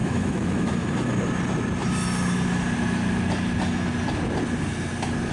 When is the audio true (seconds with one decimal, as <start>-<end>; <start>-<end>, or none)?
0.7-5.3